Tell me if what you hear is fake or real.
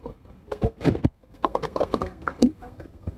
fake